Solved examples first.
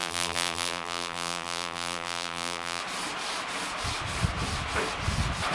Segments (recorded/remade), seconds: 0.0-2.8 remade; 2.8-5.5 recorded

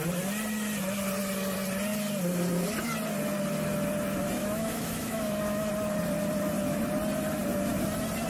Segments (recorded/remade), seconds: 0.0-4.4 recorded; 4.4-5.7 remade; 5.7-8.3 recorded

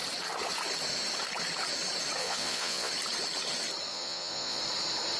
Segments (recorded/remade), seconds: 0.0-2.2 recorded; 2.2-2.9 remade; 2.9-3.9 recorded; 3.9-4.6 remade; 4.6-5.2 recorded

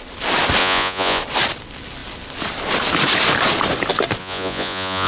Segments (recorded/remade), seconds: 0.0-0.6 recorded; 0.6-1.2 remade; 1.2-4.2 recorded; 4.2-5.1 remade

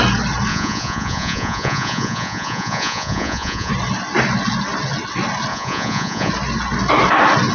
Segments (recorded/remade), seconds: 0.0-0.5 recorded; 0.5-3.7 remade; 3.7-5.5 recorded; 5.5-6.3 remade; 6.3-7.5 recorded